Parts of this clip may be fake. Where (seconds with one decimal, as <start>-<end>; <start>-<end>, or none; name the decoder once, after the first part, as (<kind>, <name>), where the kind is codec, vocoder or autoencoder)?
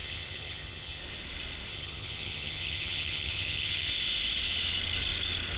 0.0-1.0 (vocoder, HiFi-GAN); 1.7-3.9